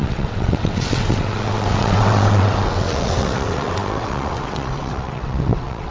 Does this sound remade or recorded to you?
remade